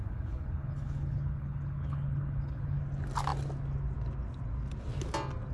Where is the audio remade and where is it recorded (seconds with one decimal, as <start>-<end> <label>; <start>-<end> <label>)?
0.0-2.8 remade; 2.8-5.5 recorded